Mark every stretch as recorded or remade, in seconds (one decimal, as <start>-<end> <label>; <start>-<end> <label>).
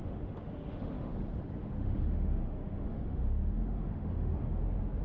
0.0-1.1 remade; 1.1-1.6 recorded; 1.6-4.6 remade; 4.6-5.0 recorded